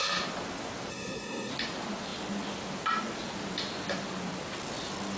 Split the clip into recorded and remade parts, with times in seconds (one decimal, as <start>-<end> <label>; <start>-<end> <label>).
0.0-0.9 recorded; 0.9-1.5 remade; 1.5-5.2 recorded